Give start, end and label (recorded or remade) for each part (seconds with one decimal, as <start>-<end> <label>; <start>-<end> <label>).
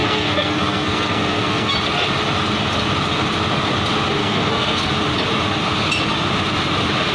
0.0-1.7 remade; 1.7-4.2 recorded; 4.2-4.9 remade; 4.9-7.1 recorded